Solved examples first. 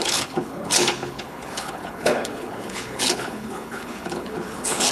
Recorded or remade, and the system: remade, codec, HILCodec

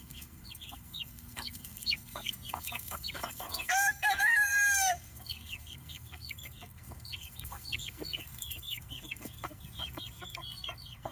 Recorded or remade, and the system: remade, codec, SNAC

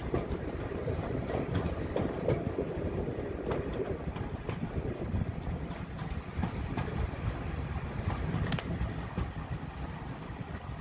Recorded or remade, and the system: recorded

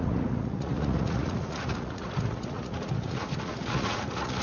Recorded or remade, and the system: remade, vocoder, Vocos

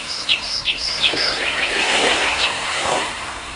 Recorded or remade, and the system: remade, codec, SNAC